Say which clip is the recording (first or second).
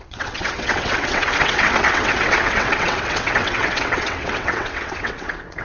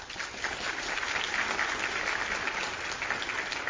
second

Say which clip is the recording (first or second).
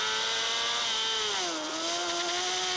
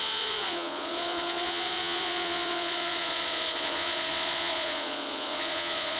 first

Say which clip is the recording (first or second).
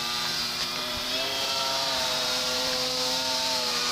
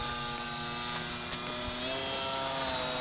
second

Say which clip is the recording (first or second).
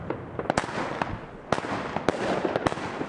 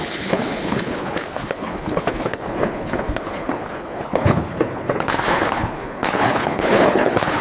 first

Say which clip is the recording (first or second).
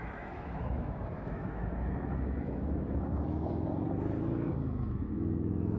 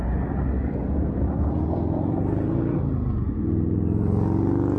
second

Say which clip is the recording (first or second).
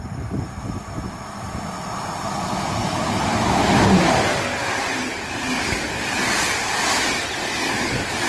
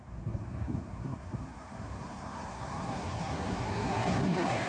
first